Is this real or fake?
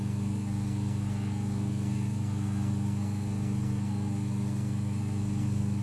fake